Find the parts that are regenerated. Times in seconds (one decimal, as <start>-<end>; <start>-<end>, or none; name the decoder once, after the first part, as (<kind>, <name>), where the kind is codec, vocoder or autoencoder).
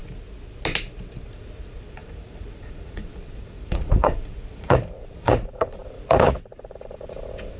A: 1.3-7.6 (vocoder, Vocos)